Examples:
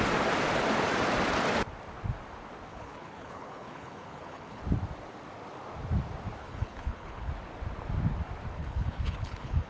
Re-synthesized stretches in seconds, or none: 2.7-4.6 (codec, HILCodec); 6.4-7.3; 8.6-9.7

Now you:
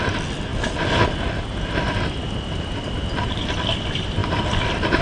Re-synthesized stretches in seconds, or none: none

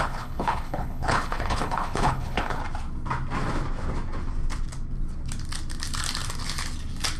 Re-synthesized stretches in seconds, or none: 0.0-2.6 (codec, HILCodec)

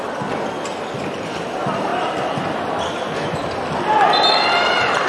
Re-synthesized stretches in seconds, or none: none